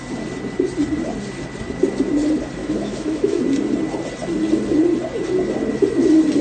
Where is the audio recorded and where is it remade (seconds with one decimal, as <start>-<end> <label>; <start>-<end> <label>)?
0.0-2.6 recorded; 2.6-3.4 remade; 3.4-6.4 recorded